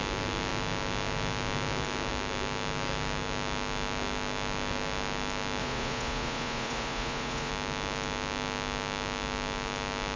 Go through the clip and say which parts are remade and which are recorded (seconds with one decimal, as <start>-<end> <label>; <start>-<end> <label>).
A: 0.0-5.6 recorded; 5.6-7.5 remade; 7.5-10.2 recorded